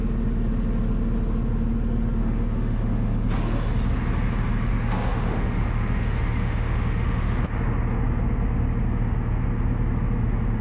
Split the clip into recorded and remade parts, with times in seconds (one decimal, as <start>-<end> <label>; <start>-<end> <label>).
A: 0.0-2.2 recorded; 2.2-3.3 remade; 3.3-4.7 recorded; 4.7-7.4 remade; 7.4-10.6 recorded